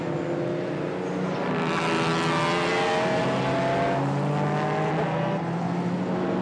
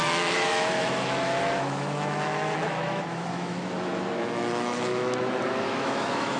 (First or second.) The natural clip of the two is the first